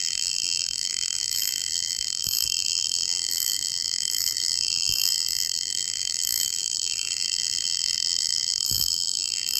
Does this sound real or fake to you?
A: fake